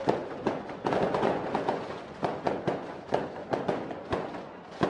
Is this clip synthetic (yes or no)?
yes